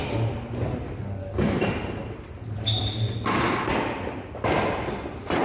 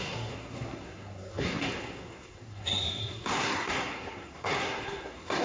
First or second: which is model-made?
second